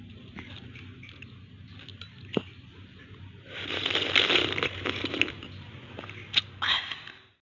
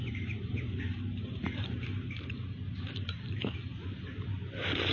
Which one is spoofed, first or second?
second